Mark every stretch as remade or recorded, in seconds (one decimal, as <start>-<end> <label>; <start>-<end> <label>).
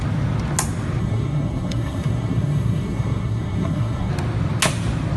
0.0-1.0 recorded; 1.0-4.1 remade; 4.1-5.2 recorded